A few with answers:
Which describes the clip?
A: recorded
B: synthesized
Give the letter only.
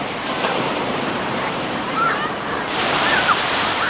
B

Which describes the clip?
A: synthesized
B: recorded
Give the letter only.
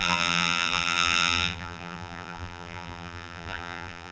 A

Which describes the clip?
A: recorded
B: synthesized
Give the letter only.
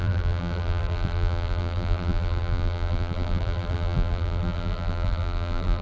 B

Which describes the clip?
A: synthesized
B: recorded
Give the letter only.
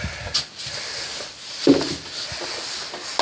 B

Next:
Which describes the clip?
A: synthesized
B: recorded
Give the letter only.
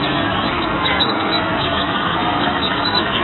A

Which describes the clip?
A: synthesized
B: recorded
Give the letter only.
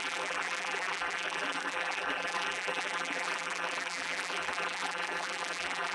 A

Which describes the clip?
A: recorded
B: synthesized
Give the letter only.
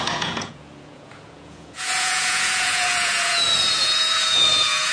B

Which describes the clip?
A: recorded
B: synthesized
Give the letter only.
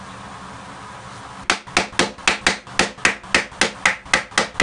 A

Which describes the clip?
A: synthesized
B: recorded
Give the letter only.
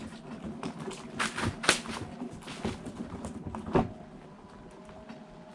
B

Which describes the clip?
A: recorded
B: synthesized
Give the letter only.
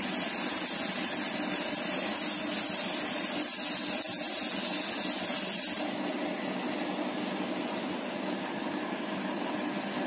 A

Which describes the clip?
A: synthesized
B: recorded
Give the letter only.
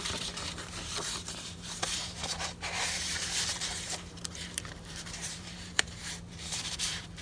A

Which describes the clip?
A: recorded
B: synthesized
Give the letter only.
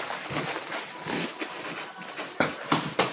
A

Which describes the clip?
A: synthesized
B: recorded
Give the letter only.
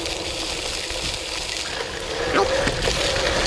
B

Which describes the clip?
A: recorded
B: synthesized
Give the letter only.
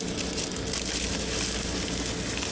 A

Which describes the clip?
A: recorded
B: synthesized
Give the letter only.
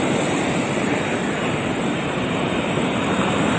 B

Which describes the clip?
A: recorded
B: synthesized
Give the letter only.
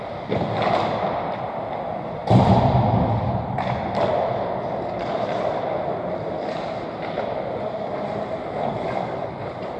A